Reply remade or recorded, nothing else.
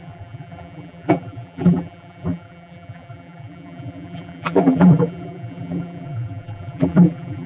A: remade